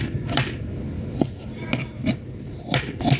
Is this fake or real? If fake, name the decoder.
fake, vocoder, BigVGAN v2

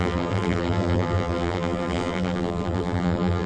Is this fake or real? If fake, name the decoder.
fake, vocoder, BigVGAN v2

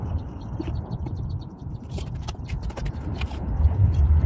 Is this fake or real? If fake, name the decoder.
fake, vocoder, BigVGAN v2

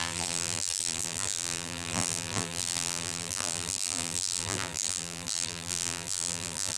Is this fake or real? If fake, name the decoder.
fake, vocoder, BigVGAN v2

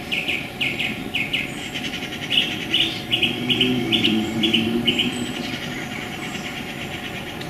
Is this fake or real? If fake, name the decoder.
fake, vocoder, BigVGAN v2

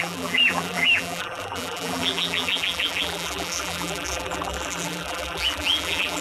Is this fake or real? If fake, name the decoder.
fake, vocoder, BigVGAN v2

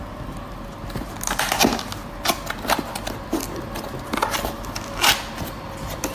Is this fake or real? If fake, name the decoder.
real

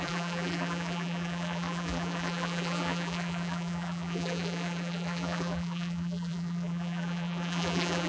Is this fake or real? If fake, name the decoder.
fake, vocoder, BigVGAN v2